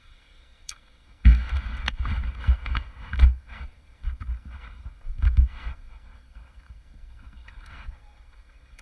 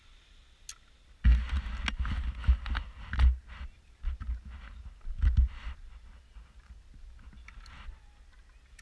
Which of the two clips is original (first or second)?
second